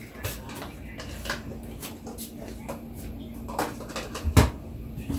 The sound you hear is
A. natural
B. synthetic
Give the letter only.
A